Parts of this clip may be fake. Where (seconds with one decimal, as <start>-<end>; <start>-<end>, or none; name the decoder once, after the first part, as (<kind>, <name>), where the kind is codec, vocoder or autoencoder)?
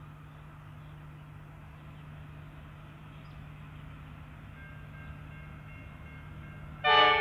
none